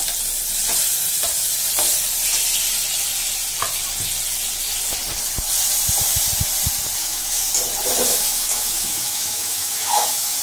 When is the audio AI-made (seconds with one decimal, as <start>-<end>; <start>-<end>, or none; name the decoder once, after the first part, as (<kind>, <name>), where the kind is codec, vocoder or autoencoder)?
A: 7.0-7.5 (autoencoder, DAC-VAE); 8.1-10.4